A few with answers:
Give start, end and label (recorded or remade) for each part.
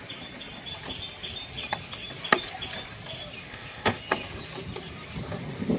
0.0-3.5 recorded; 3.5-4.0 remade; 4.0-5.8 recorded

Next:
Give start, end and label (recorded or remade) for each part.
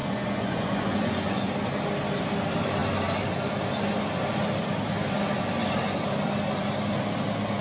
0.0-1.5 remade; 1.5-7.6 recorded